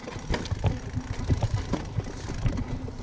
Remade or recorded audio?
recorded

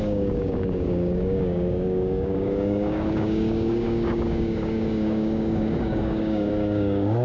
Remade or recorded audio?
remade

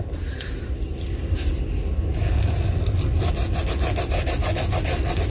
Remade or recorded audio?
recorded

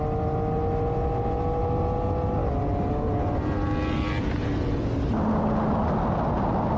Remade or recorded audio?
recorded